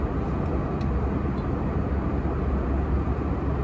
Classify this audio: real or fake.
real